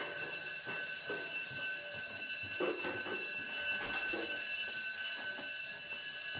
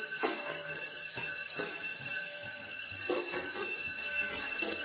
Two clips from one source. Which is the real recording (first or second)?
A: first